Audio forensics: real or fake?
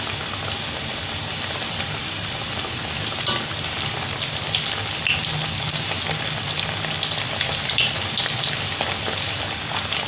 real